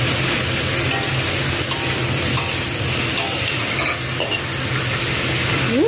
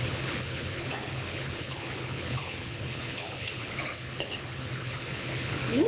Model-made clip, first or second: second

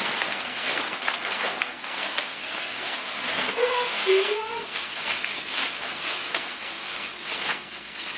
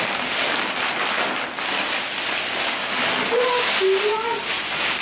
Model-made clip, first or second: first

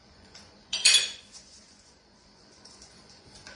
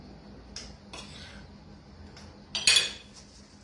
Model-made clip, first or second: first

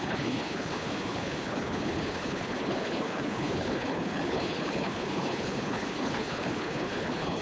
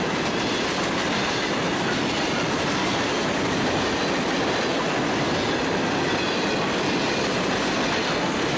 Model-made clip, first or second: first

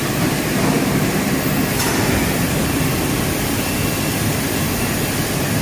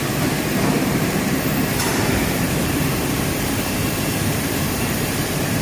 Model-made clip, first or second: second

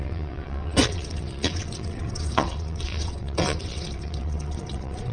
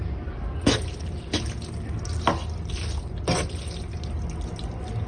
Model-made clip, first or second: first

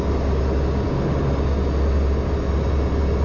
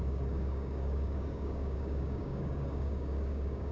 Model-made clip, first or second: second